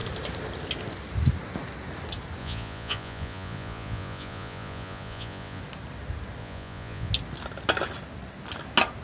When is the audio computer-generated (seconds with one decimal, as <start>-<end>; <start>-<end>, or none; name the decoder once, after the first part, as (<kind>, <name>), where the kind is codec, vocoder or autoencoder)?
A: 2.4-5.6 (vocoder, Vocos); 6.4-7.1